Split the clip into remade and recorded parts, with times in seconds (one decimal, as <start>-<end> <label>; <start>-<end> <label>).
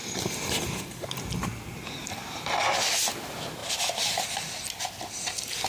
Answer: 0.0-2.0 recorded; 2.0-2.6 remade; 2.6-3.6 recorded; 3.6-4.4 remade; 4.4-5.7 recorded